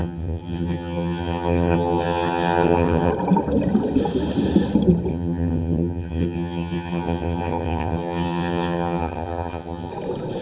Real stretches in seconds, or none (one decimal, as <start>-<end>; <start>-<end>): 3.1-5.1; 9.9-10.4